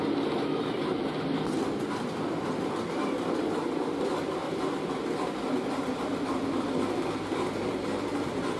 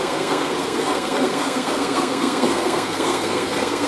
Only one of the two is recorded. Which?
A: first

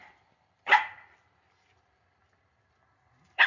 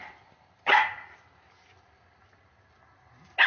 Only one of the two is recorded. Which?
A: second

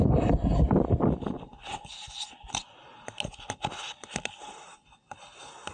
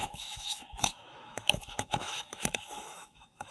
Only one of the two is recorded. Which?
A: first